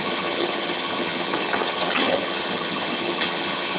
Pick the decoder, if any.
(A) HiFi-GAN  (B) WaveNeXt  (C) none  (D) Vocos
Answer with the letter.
A